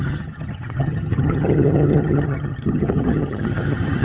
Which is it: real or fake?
fake